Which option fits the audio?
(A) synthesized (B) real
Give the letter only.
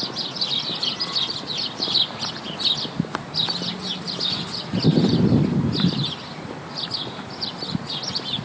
B